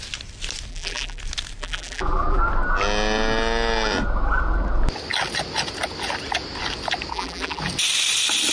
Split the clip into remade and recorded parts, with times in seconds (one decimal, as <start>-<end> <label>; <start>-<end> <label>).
0.0-0.7 recorded; 0.7-1.2 remade; 1.2-1.6 recorded; 1.6-2.4 remade; 2.4-7.1 recorded; 7.1-7.6 remade; 7.6-8.5 recorded